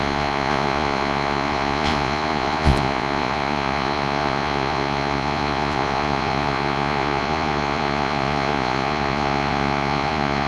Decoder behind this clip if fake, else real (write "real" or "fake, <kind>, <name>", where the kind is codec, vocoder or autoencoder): fake, vocoder, Vocos